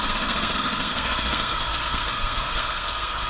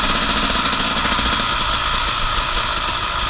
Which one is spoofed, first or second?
first